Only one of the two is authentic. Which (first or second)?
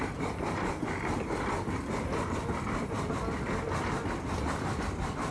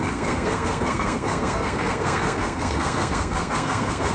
first